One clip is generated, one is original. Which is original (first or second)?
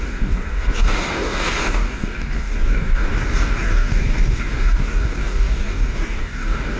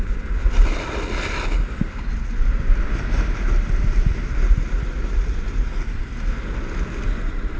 second